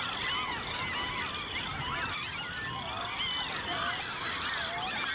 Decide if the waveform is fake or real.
real